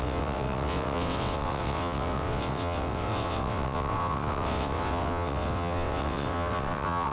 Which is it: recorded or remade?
remade